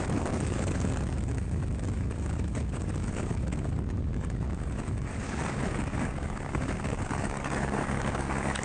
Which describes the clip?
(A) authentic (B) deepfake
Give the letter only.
B